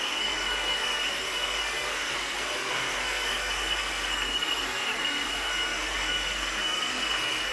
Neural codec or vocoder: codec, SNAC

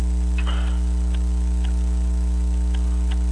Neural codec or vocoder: none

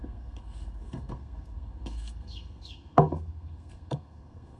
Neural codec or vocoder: codec, SNAC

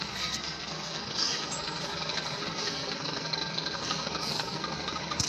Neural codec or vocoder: codec, SNAC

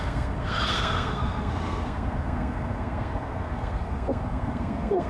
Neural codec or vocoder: codec, SNAC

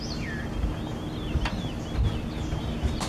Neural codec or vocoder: none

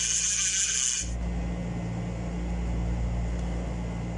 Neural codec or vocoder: none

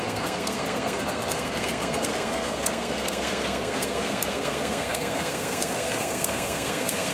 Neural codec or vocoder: codec, SNAC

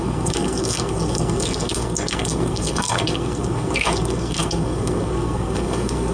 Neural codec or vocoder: codec, SNAC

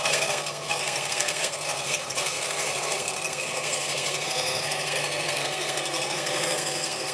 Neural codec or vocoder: codec, SNAC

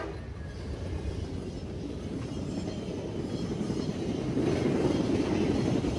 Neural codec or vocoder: none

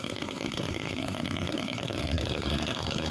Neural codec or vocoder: codec, SNAC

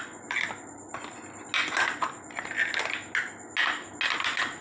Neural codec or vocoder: none